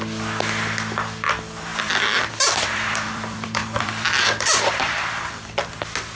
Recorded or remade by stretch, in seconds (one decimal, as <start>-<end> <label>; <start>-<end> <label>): 0.0-1.7 recorded; 1.7-5.4 remade; 5.4-6.2 recorded